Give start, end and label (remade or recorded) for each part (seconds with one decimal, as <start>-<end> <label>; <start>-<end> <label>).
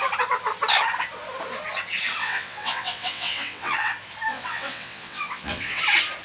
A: 0.0-2.2 recorded; 2.2-3.9 remade; 3.9-4.3 recorded; 4.3-5.8 remade; 5.8-6.2 recorded